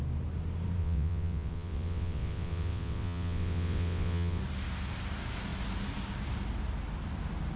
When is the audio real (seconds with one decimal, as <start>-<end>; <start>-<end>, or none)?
0.0-0.8; 4.4-7.6